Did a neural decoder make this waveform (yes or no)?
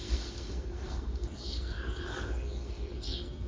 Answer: yes